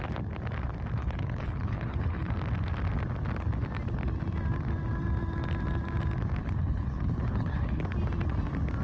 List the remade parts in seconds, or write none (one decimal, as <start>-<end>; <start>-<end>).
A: 1.0-2.3; 6.4-7.8